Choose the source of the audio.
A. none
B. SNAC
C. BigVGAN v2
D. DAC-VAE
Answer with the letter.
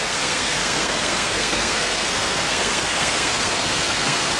B